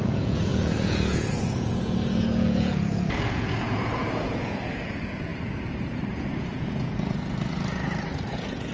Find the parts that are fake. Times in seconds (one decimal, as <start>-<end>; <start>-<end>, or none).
0.0-5.3; 6.1-8.7